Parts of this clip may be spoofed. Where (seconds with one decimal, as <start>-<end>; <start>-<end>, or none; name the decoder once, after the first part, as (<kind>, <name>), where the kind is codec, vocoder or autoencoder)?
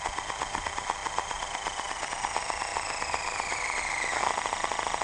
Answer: none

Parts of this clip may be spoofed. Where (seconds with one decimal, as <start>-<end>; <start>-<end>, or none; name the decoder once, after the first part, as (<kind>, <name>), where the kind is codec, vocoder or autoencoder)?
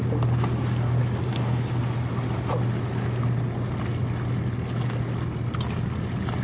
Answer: none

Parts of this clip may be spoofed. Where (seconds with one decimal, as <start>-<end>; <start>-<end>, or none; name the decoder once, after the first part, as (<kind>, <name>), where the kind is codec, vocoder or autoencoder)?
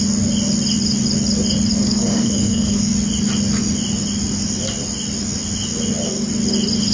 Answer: 1.8-2.9 (codec, SNAC)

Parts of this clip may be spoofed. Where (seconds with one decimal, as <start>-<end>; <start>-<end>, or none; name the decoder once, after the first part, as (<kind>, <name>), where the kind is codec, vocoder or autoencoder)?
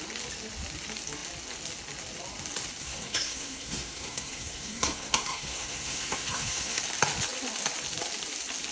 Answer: 2.8-6.8 (codec, SNAC)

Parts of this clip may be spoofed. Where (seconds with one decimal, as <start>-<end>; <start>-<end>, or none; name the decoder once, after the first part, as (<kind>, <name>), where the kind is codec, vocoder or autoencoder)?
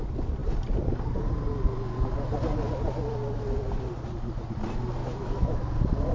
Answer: 5.0-5.6 (autoencoder, DAC-VAE)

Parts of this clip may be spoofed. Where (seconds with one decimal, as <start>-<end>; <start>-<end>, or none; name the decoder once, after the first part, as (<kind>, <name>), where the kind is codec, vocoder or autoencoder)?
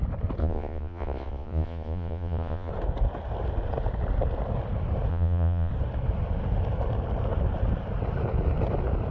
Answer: 0.4-2.7 (vocoder, Vocos); 5.1-5.7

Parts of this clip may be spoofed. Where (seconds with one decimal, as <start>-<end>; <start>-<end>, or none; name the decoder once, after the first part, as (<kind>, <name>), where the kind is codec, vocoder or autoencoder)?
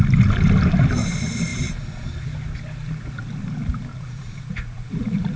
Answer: 3.9-4.9 (vocoder, Vocos)